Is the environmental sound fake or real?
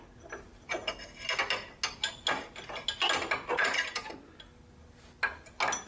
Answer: real